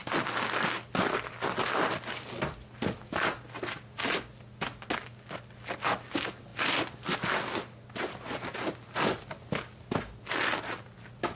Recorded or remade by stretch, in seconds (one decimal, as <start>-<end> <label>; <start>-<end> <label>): 0.0-11.4 recorded